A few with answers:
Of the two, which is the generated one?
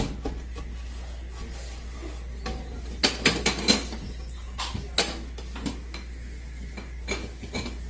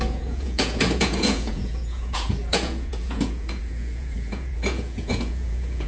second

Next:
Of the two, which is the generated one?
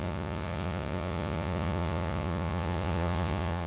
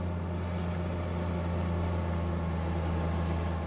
first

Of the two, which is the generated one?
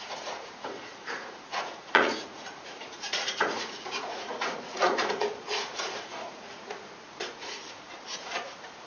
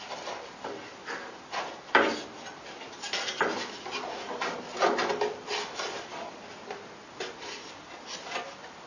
first